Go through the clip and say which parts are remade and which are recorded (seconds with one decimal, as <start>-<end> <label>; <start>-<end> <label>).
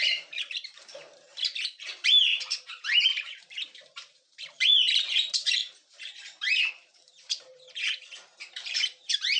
0.0-9.4 remade